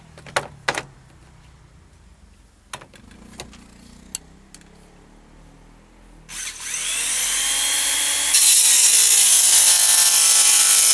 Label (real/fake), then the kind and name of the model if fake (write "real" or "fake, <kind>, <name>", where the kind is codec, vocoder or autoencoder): real